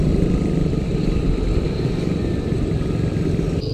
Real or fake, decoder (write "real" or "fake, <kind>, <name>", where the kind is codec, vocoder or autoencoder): real